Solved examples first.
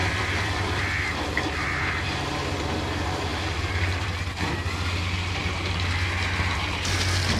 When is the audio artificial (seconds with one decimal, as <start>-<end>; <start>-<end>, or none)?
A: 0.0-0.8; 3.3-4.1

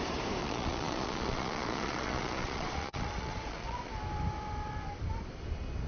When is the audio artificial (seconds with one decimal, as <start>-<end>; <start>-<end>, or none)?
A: 0.4-3.9

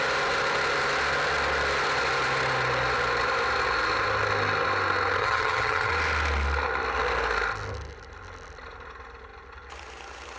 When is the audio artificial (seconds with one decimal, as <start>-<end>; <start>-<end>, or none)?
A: 5.2-5.9

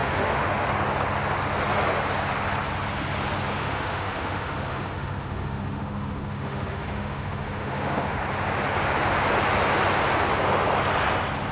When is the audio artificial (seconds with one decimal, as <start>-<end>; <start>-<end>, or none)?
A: 0.0-0.7; 3.6-8.2